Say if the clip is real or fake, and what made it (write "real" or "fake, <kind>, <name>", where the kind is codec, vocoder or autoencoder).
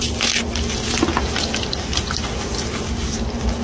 real